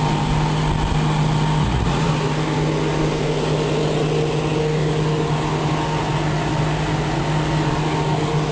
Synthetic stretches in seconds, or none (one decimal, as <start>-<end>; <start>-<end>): 1.6-2.1